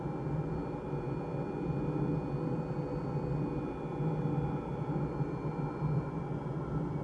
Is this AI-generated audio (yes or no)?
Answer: no